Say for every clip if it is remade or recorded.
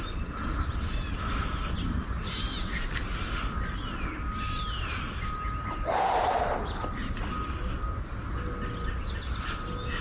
recorded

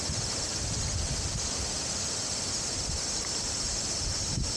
remade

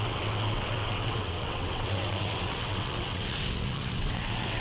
remade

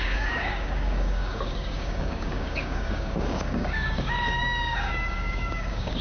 remade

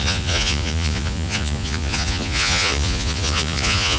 remade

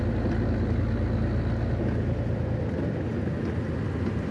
recorded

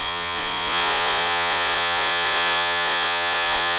remade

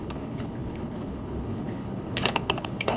remade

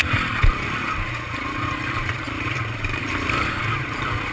remade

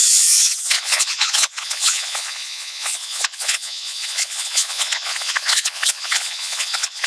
remade